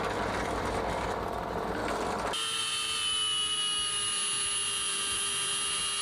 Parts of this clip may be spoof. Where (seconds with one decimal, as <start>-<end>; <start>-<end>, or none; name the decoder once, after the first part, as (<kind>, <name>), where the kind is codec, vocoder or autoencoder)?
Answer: none